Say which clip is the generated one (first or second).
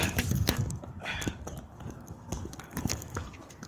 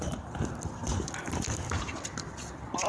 first